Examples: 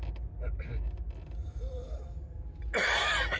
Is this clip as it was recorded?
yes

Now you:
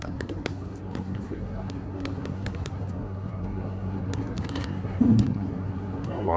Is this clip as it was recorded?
no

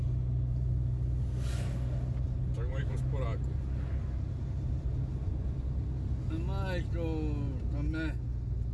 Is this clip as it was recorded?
yes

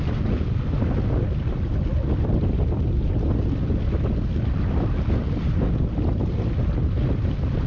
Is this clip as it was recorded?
yes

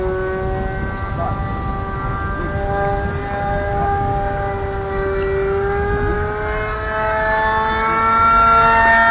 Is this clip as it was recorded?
yes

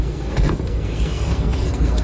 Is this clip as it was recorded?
no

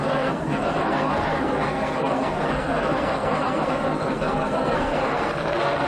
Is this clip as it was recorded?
no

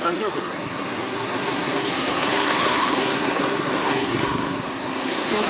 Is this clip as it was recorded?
no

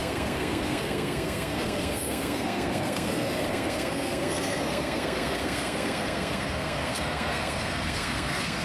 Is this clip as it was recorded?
no